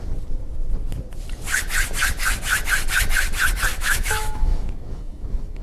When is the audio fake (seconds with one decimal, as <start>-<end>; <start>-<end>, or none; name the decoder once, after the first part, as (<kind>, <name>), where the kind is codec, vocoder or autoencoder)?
3.7-5.6 (autoencoder, DAC-VAE)

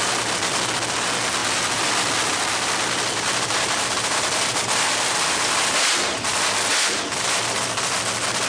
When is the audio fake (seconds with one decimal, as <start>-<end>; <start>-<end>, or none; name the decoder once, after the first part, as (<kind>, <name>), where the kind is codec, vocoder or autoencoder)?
1.4-6.5 (vocoder, BigVGAN v2)

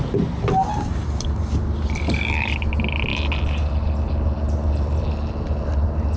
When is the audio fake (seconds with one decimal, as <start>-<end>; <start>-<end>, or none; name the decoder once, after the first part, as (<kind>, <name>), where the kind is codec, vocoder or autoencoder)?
none

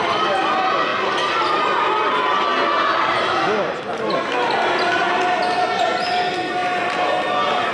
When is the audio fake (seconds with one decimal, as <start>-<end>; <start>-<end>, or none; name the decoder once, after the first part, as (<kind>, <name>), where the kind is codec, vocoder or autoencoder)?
none

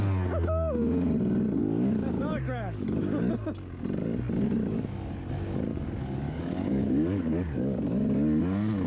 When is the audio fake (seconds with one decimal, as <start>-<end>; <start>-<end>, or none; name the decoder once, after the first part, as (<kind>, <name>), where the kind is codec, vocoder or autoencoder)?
1.6-3.3 (codec, DAC); 5.7-7.8